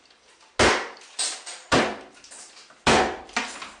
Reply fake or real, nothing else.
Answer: real